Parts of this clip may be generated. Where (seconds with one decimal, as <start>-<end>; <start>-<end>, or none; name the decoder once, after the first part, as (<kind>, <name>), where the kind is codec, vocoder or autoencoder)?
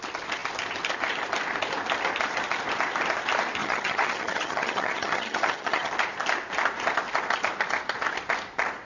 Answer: 3.6-5.9 (vocoder, HiFi-GAN)